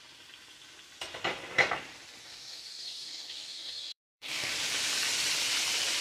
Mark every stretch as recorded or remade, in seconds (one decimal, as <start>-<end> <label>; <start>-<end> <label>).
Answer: 0.0-2.2 recorded; 2.2-4.5 remade; 4.5-6.0 recorded